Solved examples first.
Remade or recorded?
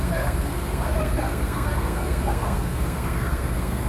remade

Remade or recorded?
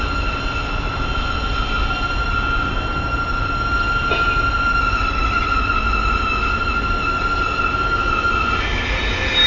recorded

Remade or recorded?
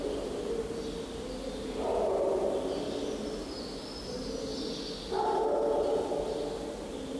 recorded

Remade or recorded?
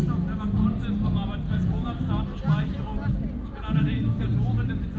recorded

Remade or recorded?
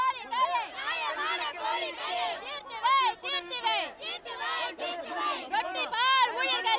recorded